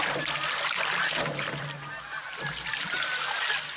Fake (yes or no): no